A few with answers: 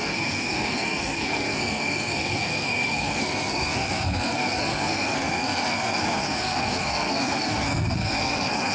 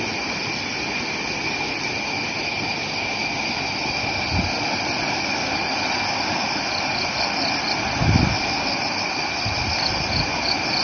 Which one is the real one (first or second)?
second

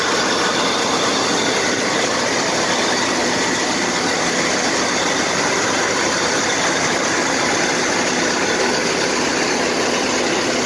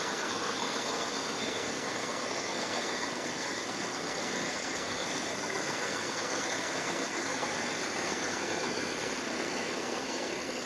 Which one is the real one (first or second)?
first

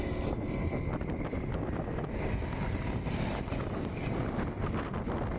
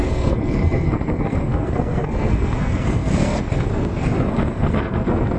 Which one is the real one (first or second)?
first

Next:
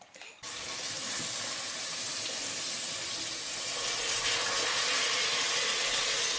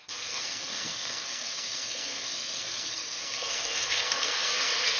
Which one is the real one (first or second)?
first